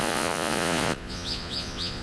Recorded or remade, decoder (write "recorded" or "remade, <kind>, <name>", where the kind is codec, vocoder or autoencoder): remade, vocoder, Vocos